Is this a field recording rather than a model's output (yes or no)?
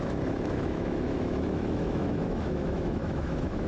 no